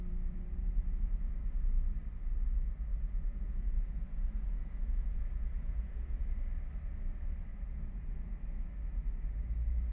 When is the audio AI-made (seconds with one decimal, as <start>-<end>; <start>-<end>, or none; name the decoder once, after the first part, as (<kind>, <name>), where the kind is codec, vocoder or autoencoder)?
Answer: 2.9-6.2 (vocoder, Vocos); 7.5-8.4